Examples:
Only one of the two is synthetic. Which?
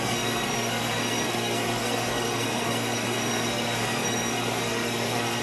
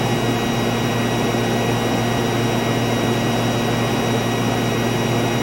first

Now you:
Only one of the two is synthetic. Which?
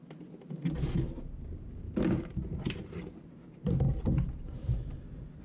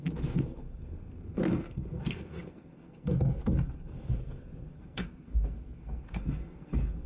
second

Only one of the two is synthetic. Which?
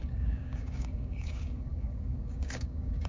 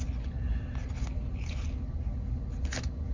first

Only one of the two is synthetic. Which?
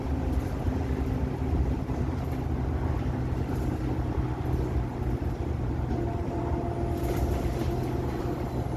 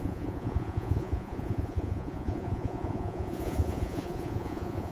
second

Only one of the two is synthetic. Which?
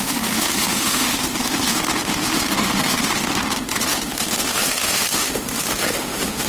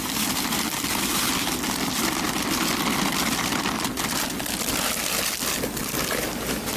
first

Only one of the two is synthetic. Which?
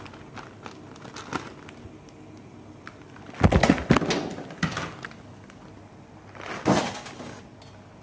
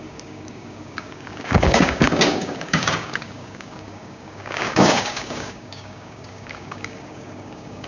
second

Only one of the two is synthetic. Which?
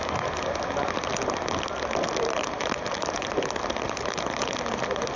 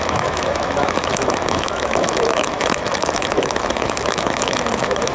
second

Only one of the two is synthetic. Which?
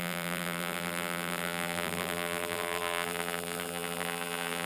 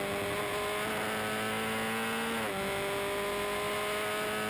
first